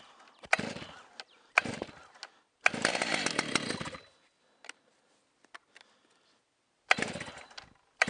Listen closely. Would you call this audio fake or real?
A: real